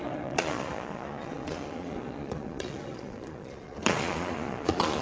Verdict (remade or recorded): remade